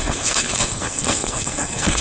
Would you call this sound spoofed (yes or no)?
yes